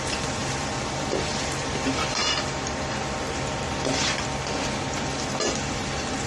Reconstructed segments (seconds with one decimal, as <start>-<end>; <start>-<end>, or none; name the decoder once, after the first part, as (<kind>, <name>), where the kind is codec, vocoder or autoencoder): 0.0-2.2 (vocoder, BigVGAN v2); 5.7-6.3